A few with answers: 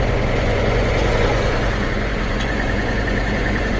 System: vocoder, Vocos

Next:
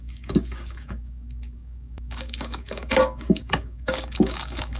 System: codec, DAC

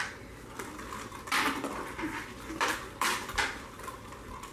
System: vocoder, BigVGAN v2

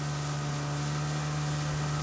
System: none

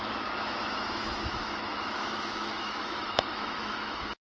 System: autoencoder, DAC-VAE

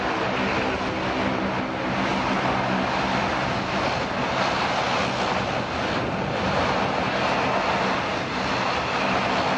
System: none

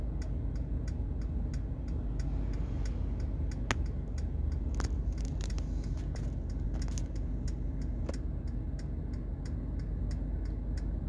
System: none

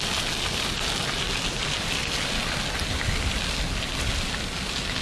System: none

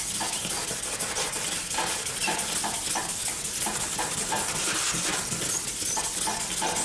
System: none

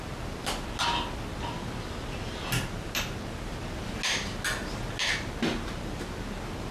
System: none